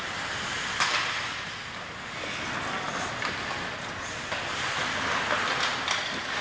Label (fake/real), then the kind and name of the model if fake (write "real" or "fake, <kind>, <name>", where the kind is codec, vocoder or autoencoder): real